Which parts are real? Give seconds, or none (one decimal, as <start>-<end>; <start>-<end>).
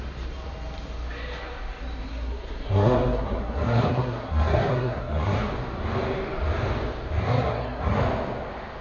0.0-2.1; 5.5-7.2; 8.0-8.8